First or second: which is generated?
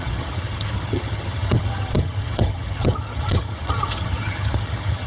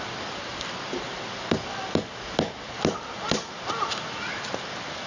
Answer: first